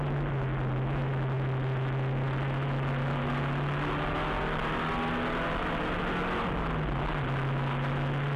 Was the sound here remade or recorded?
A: recorded